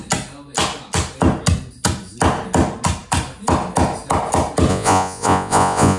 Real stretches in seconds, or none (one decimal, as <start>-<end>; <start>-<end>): 0.0-4.7